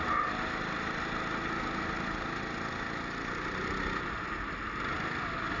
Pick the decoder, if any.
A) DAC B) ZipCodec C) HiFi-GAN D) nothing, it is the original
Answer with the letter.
D